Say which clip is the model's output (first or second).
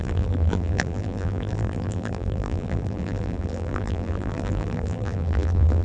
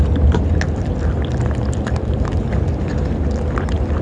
first